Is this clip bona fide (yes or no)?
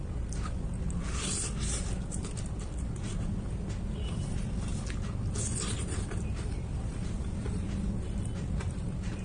yes